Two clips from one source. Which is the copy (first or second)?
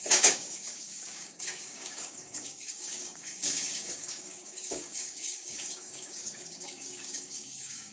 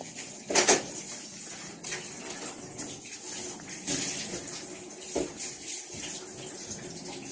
first